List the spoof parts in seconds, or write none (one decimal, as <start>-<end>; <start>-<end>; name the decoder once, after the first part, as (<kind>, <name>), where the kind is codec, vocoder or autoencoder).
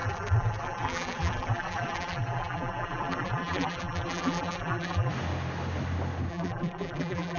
0.0-5.1 (vocoder, BigVGAN v2); 6.3-7.4